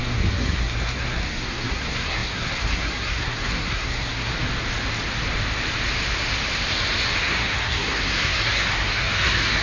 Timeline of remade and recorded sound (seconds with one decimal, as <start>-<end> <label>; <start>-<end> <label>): 0.0-4.3 remade; 4.3-7.2 recorded; 7.2-9.6 remade